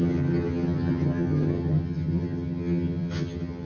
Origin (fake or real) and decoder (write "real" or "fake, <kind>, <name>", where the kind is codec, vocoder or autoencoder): fake, vocoder, HiFi-GAN